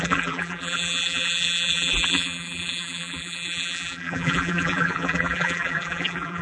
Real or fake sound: fake